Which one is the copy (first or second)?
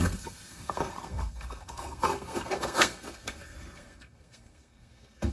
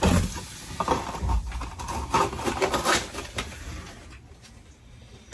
first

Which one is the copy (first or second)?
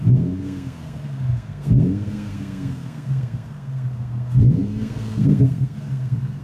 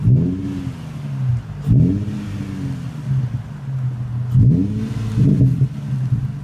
first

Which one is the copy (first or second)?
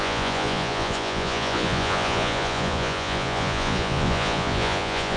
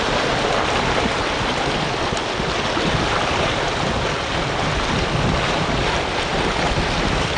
first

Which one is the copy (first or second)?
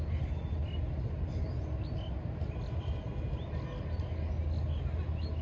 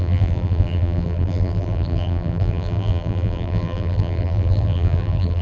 second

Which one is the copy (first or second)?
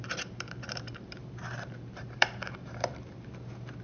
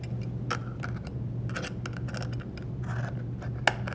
first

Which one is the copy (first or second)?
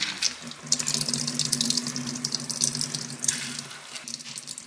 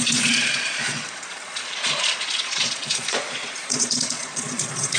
second